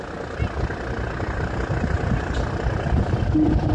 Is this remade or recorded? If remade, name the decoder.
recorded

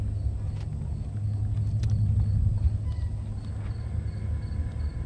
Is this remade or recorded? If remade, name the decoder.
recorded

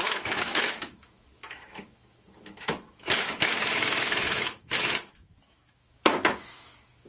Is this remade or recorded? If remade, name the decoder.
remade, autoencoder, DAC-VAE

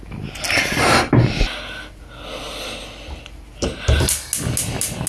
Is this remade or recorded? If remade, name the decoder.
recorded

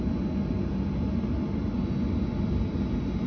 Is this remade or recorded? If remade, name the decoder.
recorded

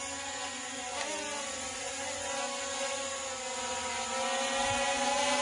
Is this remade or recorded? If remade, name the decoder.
recorded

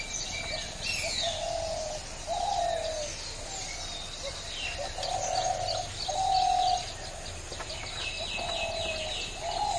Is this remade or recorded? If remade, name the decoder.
recorded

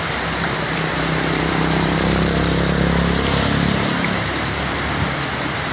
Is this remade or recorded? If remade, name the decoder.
remade, vocoder, BigVGAN v2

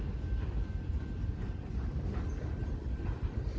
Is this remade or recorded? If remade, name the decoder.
recorded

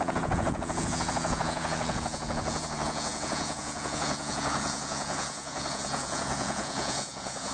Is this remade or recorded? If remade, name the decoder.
remade, vocoder, Vocos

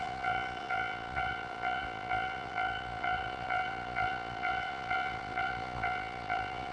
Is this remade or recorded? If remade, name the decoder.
remade, vocoder, Vocos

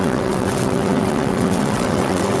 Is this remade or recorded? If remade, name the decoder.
remade, vocoder, WaveNeXt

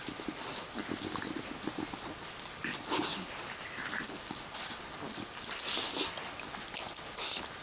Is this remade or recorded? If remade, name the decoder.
recorded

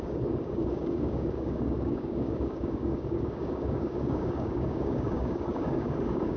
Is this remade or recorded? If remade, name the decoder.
remade, codec, DAC